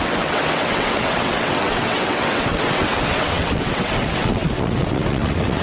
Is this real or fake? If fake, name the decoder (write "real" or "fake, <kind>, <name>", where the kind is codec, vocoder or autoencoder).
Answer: fake, vocoder, WaveNeXt